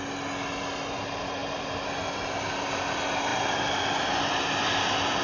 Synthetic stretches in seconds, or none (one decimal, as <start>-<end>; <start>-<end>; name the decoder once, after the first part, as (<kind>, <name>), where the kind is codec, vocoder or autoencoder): none